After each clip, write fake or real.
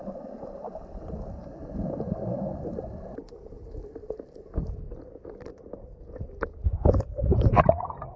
fake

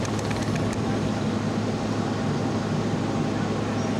real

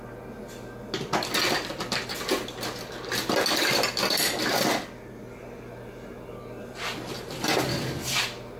real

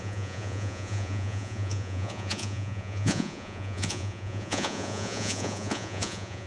fake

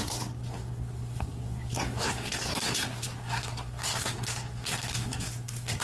fake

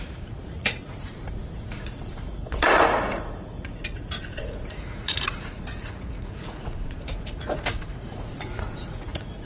fake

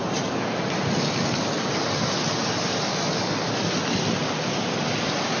real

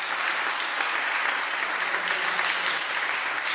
real